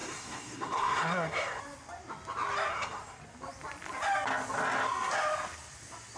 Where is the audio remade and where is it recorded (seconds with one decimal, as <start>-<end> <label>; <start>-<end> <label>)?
0.0-1.6 remade; 1.6-2.7 recorded; 2.7-3.2 remade; 3.2-6.2 recorded